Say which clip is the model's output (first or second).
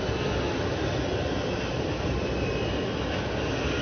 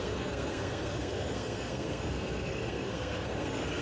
second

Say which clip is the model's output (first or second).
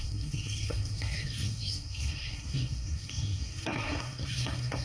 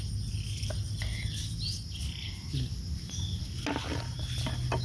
first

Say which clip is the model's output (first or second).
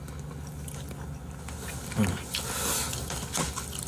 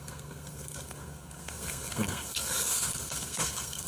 second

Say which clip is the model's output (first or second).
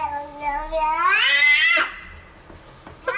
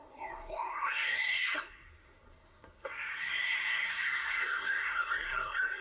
second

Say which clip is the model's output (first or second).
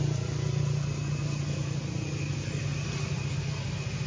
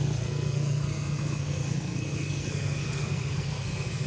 second